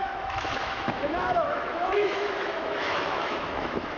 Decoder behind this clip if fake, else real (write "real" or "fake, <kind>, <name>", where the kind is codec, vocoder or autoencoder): fake, autoencoder, DAC-VAE